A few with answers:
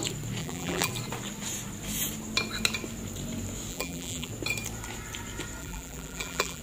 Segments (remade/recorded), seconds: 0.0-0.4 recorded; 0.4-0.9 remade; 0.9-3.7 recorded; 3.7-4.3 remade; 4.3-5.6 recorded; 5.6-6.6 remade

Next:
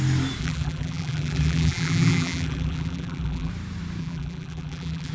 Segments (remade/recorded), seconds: 0.0-0.4 recorded; 0.4-3.5 remade; 3.5-4.0 recorded; 4.0-5.1 remade

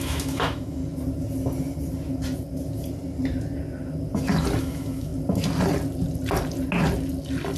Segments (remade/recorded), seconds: 0.0-0.8 remade; 0.8-4.6 recorded; 4.6-5.1 remade; 5.1-7.6 recorded

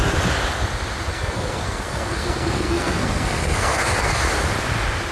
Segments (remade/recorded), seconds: 0.0-1.1 recorded; 1.1-4.2 remade; 4.2-5.1 recorded

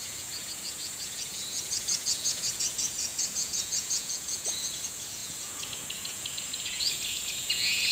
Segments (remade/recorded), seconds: 0.0-7.9 remade

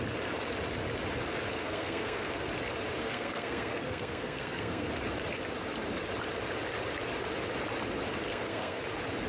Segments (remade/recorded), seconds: 0.0-1.6 recorded; 1.6-2.5 remade; 2.5-3.0 recorded; 3.0-4.9 remade; 4.9-8.3 recorded; 8.3-8.8 remade; 8.8-9.3 recorded

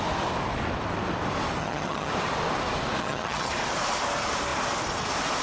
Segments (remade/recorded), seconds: 0.0-1.6 recorded; 1.6-2.1 remade; 2.1-3.0 recorded; 3.0-3.5 remade; 3.5-5.4 recorded